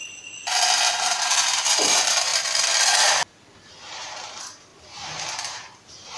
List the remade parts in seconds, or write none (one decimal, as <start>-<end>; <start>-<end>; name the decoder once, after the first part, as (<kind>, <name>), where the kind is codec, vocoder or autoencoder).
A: 0.9-2.3 (vocoder, BigVGAN v2); 3.7-6.2